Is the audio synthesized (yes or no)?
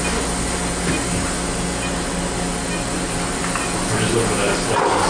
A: no